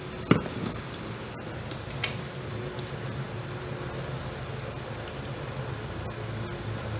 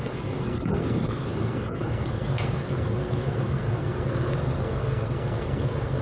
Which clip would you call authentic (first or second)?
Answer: first